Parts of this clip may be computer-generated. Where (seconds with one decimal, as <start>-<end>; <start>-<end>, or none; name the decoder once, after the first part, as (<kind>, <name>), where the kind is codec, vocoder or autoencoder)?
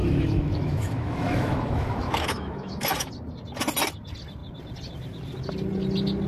0.0-3.1 (autoencoder, DAC-VAE)